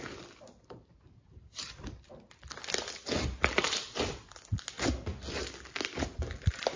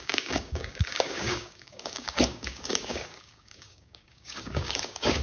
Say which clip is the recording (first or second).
first